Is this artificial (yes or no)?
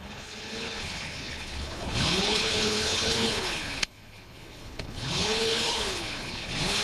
yes